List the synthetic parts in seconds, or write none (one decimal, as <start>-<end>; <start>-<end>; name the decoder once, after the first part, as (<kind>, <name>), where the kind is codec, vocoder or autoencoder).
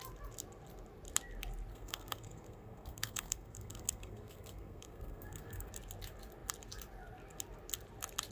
1.7-5.7 (codec, SNAC)